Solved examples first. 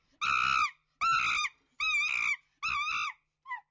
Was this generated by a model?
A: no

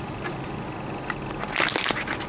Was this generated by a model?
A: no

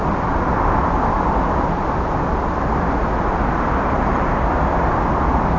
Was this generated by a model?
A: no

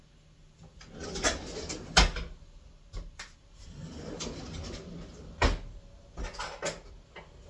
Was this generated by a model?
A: no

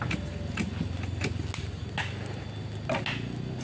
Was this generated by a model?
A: no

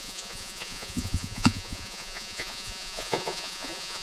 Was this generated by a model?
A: yes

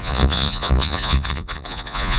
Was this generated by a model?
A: yes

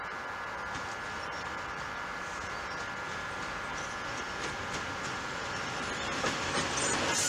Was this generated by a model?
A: no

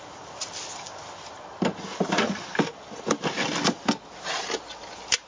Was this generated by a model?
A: no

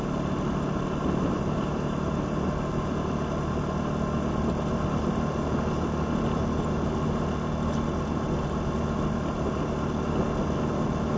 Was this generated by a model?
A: no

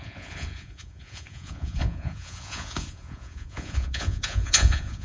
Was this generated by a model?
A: yes